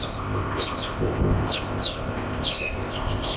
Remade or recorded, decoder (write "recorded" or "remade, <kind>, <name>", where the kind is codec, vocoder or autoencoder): remade, codec, ZipCodec